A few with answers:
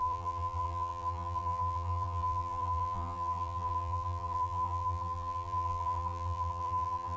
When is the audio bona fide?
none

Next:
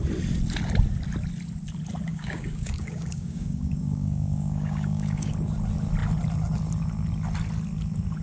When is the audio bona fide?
0.0-2.1; 5.3-8.2

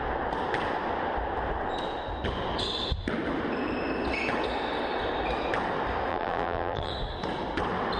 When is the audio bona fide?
0.0-6.1; 6.9-8.0